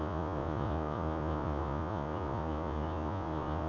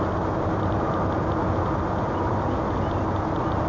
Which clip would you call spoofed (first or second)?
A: first